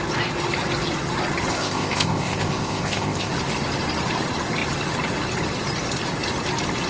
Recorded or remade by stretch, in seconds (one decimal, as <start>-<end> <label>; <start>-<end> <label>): 0.0-1.5 recorded; 1.5-3.3 remade; 3.3-6.9 recorded

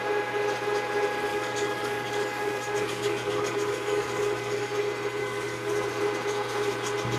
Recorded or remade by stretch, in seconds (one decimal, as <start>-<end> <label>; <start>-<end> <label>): 0.0-1.3 recorded; 1.3-4.7 remade; 4.7-5.2 recorded; 5.2-6.0 remade; 6.0-7.2 recorded

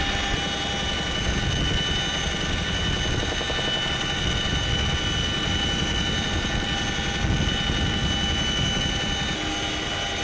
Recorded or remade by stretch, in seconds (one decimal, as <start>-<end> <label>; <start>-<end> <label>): 0.0-10.2 recorded

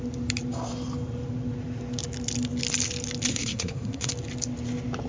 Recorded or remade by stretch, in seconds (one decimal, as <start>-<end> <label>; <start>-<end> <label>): 0.0-3.3 recorded; 3.3-4.1 remade; 4.1-5.1 recorded